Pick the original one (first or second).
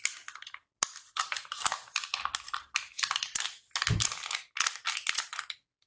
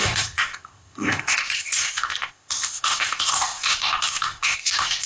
first